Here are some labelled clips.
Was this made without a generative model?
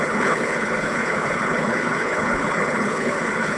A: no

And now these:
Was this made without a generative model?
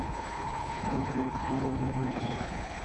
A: no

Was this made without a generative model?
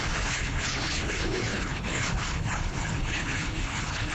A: no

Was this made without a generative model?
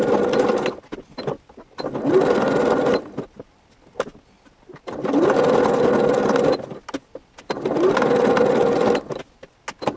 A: yes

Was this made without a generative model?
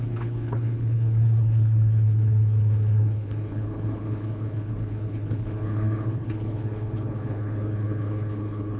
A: no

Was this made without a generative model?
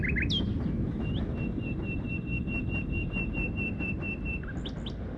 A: yes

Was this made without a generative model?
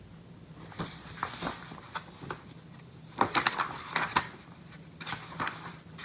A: yes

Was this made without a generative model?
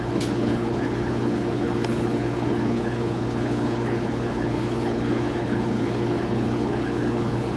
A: no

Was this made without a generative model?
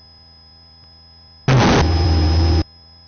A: yes